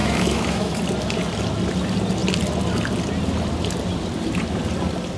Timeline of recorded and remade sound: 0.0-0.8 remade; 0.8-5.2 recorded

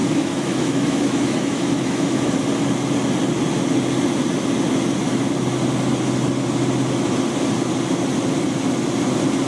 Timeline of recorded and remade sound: 0.0-2.3 remade; 2.3-9.5 recorded

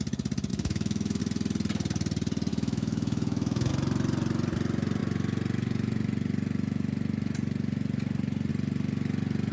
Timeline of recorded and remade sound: 0.0-0.5 recorded; 0.5-1.2 remade; 1.2-2.5 recorded; 2.5-3.7 remade; 3.7-9.5 recorded

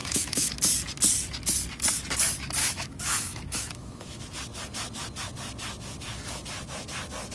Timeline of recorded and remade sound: 0.0-0.5 remade; 0.5-2.6 recorded; 2.6-4.2 remade; 4.2-7.3 recorded

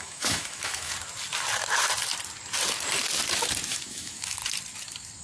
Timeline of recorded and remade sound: 0.0-0.9 remade; 0.9-3.7 recorded; 3.7-4.4 remade; 4.4-5.2 recorded

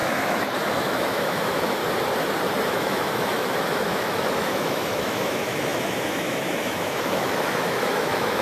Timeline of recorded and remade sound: 0.0-1.8 remade; 1.8-2.7 recorded; 2.7-8.4 remade

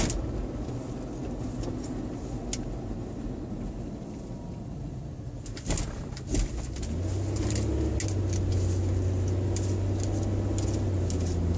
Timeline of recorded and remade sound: 0.0-11.6 recorded

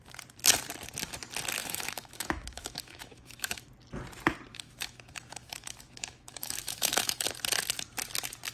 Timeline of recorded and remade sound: 0.0-1.6 recorded; 1.6-3.7 remade; 3.7-4.5 recorded; 4.5-7.3 remade; 7.3-8.5 recorded